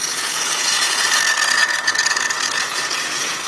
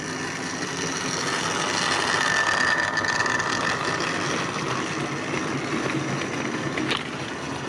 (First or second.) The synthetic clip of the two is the first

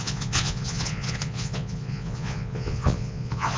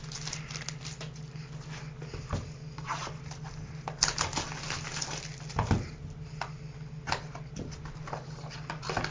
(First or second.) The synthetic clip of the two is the first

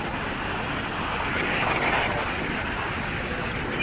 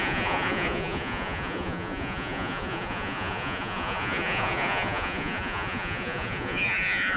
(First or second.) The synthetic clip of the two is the second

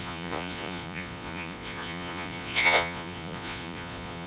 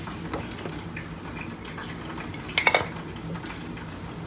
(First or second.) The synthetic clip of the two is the first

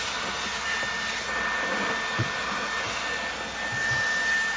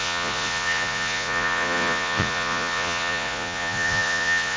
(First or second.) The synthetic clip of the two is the second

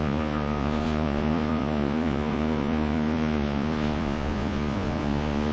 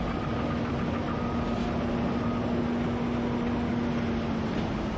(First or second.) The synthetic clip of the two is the first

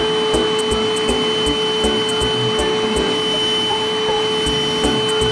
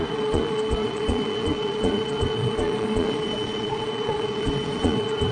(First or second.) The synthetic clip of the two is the second